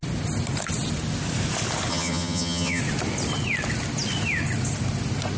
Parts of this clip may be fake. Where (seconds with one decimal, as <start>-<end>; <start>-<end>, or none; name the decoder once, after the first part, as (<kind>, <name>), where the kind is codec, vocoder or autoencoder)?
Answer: 1.9-2.8 (vocoder, HiFi-GAN)

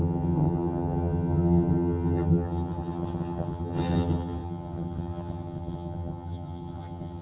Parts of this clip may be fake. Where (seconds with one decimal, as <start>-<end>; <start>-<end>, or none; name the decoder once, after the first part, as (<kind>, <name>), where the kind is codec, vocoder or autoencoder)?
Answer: 0.0-7.2 (vocoder, HiFi-GAN)

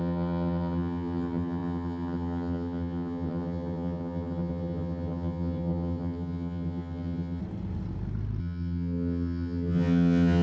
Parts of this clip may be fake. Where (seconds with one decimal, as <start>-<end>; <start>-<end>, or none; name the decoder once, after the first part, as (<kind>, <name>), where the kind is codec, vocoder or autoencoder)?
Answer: 0.0-7.4 (vocoder, HiFi-GAN); 8.4-10.4

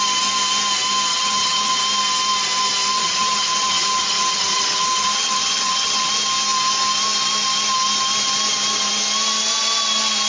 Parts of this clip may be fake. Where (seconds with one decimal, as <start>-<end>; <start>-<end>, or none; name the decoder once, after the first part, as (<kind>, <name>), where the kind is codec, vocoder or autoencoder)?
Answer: 1.1-1.8 (vocoder, HiFi-GAN); 3.0-6.1